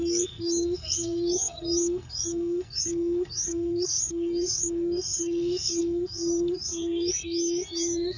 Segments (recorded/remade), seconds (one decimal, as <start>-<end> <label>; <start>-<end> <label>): 0.0-8.2 remade